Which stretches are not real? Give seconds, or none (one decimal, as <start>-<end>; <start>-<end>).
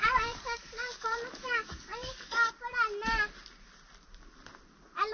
0.0-2.5